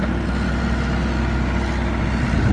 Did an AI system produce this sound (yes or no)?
no